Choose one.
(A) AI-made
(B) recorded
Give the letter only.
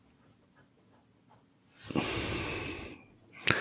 B